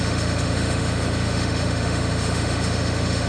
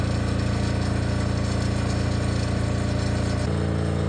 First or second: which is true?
second